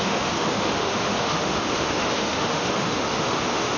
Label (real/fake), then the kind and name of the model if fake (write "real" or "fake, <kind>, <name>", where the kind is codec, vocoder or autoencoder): fake, autoencoder, DAC-VAE